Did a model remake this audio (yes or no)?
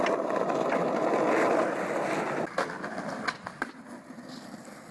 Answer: no